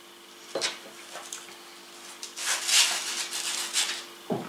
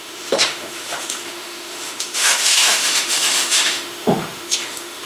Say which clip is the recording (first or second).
first